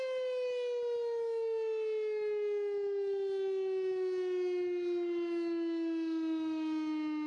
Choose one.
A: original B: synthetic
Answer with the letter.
A